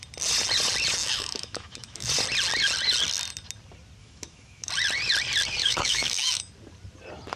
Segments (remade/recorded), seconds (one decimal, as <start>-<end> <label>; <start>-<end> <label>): 0.0-1.0 recorded; 1.0-2.1 remade; 2.1-4.0 recorded; 4.0-4.7 remade; 4.7-5.6 recorded; 5.6-6.5 remade; 6.5-7.4 recorded